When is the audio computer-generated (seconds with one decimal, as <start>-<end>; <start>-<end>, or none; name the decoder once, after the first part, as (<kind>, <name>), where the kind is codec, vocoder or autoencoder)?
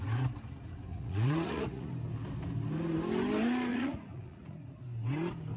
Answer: 0.9-1.9 (vocoder, Vocos); 3.7-4.8